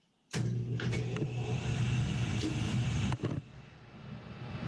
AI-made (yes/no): no